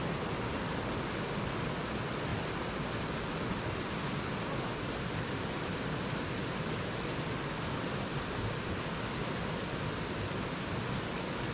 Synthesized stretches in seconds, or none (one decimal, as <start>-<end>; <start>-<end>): 2.3-3.0